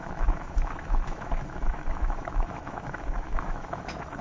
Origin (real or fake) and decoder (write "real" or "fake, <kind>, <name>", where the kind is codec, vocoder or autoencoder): fake, autoencoder, DAC-VAE